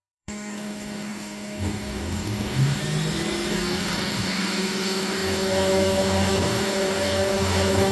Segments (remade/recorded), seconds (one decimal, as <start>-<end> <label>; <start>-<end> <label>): 0.0-2.8 remade; 2.8-3.5 recorded; 3.5-7.9 remade

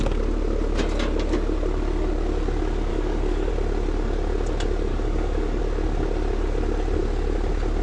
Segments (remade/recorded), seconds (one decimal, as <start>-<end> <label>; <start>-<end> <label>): 0.0-2.9 recorded; 2.9-3.5 remade; 3.5-4.9 recorded; 4.9-5.6 remade; 5.6-7.8 recorded

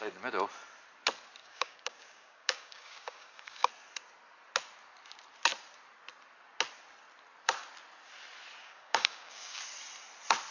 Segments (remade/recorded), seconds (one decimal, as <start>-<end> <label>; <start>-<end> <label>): 0.0-1.4 recorded; 1.4-3.7 remade; 3.7-8.6 recorded; 8.6-9.6 remade; 9.6-10.5 recorded

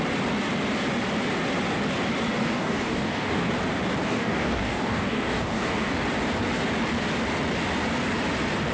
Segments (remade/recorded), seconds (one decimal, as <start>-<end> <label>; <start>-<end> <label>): 0.0-2.4 recorded; 2.4-3.5 remade; 3.5-4.1 recorded; 4.1-6.0 remade; 6.0-8.7 recorded

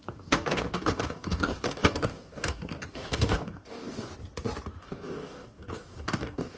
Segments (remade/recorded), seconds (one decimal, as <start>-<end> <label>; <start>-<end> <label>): 0.0-4.1 remade; 4.1-4.8 recorded; 4.8-6.6 remade

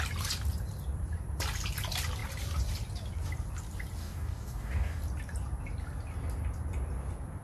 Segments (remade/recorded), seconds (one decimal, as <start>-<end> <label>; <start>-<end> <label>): 0.0-4.0 recorded; 4.0-5.0 remade; 5.0-7.4 recorded

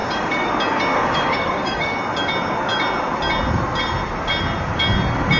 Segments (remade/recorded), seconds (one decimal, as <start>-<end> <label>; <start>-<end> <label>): 0.0-0.5 remade; 0.5-0.9 recorded; 0.9-2.0 remade; 2.0-5.4 recorded